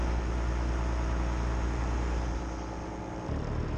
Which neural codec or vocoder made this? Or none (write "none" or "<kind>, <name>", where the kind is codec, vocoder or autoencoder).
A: none